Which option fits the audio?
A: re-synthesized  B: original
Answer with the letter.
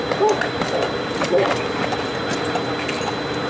B